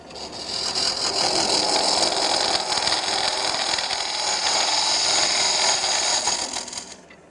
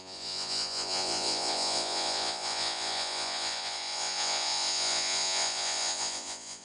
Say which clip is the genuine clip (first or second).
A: first